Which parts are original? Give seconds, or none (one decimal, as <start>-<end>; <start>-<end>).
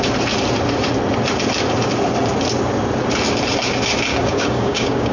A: 0.0-4.1